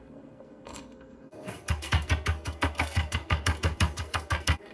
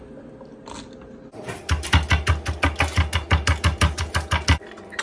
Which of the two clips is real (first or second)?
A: second